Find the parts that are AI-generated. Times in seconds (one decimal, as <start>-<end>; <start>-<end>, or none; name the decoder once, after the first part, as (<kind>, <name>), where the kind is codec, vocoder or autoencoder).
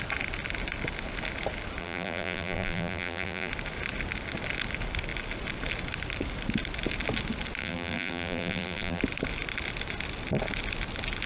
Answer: 1.8-3.5 (vocoder, BigVGAN v2); 7.6-9.0